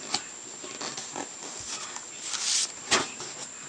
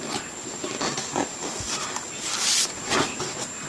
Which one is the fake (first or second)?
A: second